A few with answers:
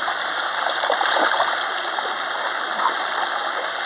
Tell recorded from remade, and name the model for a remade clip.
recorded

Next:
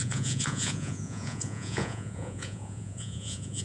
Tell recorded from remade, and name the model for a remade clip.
remade, vocoder, Vocos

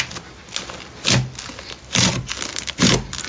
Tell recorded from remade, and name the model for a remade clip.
recorded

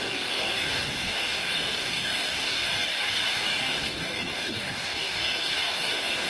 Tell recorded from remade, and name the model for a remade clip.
remade, codec, DAC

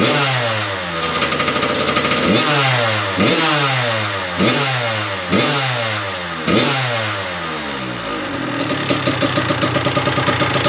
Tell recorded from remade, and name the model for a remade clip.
recorded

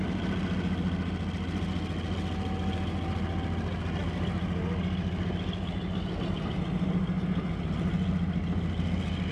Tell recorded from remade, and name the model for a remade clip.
recorded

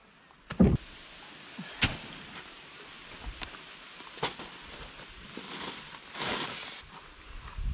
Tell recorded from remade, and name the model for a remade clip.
recorded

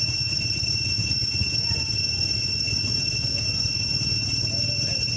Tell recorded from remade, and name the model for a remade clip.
remade, vocoder, Vocos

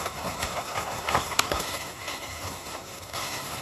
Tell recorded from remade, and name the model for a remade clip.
remade, codec, SNAC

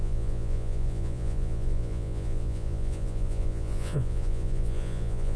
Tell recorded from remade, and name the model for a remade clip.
remade, vocoder, Vocos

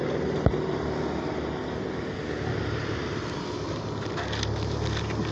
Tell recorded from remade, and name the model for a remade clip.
recorded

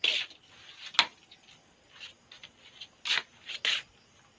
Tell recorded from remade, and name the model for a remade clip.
recorded